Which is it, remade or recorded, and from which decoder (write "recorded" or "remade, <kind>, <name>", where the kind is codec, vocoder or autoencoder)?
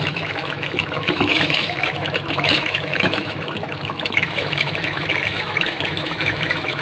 remade, autoencoder, DAC-VAE